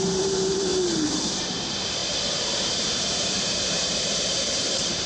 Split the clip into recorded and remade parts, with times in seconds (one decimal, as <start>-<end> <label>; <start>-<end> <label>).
0.0-0.7 remade; 0.7-1.4 recorded; 1.4-5.1 remade